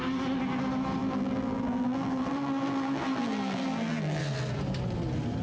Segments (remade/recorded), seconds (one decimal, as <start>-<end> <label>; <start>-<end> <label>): 0.0-1.0 recorded; 1.0-4.2 remade; 4.2-5.4 recorded